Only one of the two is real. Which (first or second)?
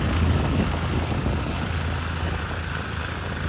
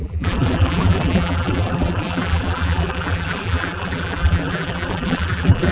first